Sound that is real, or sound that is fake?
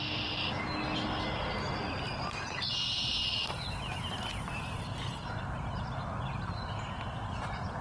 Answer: real